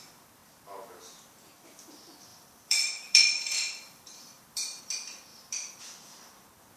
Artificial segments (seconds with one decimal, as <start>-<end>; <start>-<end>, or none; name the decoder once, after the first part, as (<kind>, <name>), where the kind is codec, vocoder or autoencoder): 2.3-4.8 (vocoder, BigVGAN v2); 5.3-5.8